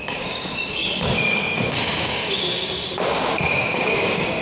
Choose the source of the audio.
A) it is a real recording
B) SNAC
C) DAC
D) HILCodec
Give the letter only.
C